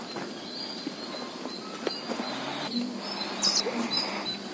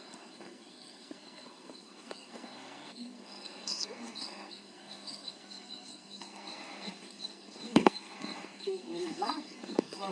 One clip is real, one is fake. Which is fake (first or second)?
second